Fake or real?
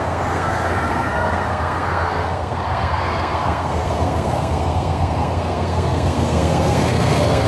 fake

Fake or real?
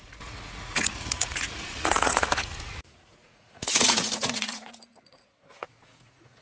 fake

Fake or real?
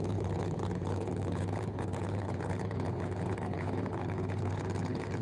fake